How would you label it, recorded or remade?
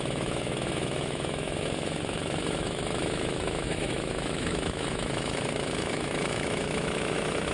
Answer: remade